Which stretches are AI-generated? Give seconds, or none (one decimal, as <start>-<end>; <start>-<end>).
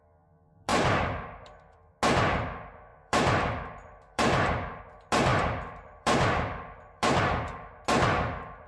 0.7-1.9; 2.9-4.8; 5.3-7.2